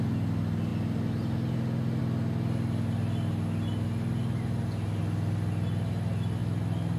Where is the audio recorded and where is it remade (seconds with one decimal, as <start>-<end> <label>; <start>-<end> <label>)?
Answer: 0.0-7.0 recorded